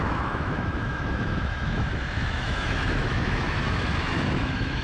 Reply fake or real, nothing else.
fake